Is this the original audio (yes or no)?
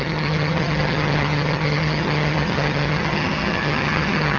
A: no